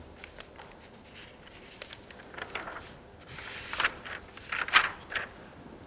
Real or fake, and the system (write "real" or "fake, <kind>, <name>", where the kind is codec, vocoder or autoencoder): real